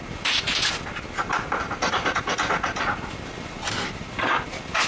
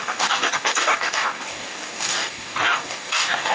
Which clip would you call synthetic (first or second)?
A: second